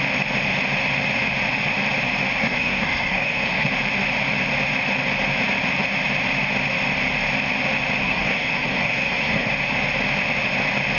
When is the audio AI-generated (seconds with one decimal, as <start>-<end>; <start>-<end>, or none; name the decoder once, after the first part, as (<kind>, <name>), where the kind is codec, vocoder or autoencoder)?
2.4-3.7 (codec, SNAC); 8.0-9.5